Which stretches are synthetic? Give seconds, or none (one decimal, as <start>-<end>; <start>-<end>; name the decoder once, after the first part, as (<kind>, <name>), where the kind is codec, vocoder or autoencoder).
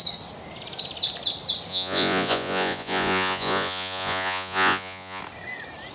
1.7-5.2 (vocoder, Vocos)